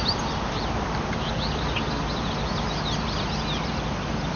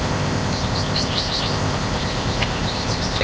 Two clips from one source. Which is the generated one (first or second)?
second